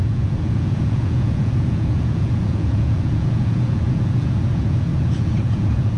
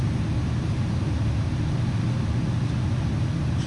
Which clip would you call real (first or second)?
second